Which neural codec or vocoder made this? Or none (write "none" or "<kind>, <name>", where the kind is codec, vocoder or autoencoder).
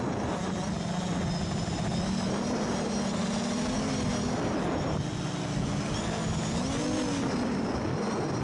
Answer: none